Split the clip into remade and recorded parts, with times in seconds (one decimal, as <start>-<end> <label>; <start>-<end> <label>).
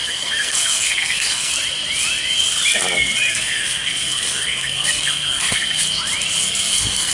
0.0-1.5 remade; 1.5-3.3 recorded; 3.3-5.8 remade; 5.8-6.4 recorded; 6.4-7.1 remade